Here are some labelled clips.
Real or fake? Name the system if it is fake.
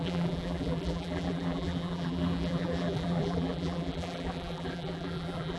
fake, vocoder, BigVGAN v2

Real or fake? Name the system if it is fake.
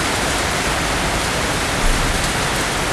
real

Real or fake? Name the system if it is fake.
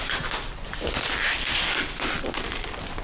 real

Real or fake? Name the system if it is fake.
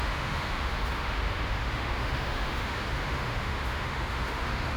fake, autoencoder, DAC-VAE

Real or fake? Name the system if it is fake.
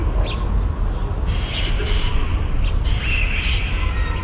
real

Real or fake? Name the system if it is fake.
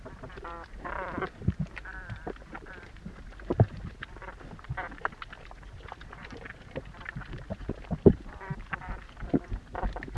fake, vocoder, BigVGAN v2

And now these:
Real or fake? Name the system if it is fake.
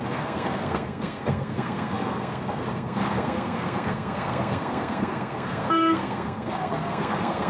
fake, codec, SNAC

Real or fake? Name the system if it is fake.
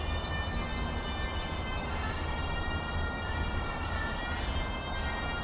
real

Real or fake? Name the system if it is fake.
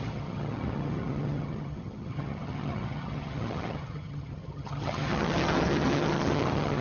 fake, vocoder, HiFi-GAN